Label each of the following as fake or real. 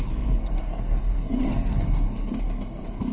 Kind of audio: fake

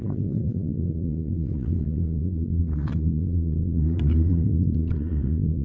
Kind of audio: fake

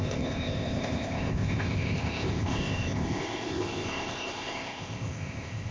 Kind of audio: fake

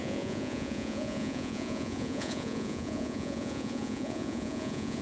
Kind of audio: fake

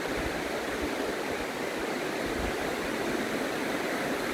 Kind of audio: real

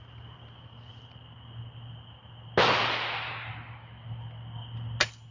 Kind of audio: real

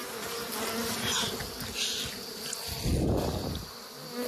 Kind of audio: real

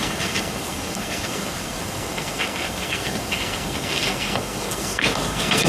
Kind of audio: fake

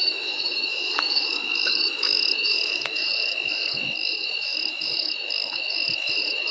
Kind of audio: fake